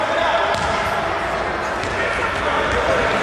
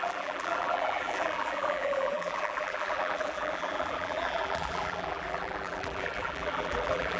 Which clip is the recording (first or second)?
first